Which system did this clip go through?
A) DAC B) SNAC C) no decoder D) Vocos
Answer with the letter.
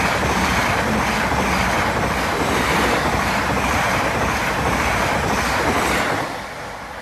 C